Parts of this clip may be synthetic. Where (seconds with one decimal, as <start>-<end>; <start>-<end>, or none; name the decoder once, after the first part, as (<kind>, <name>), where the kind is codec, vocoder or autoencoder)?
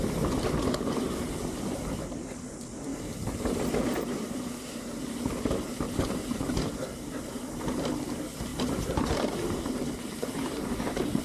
2.9-7.3 (vocoder, BigVGAN v2); 8.5-11.2